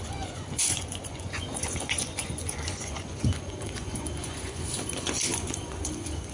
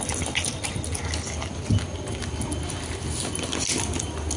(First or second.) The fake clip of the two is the first